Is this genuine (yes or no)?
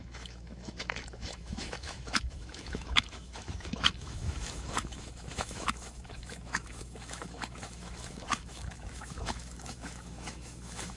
no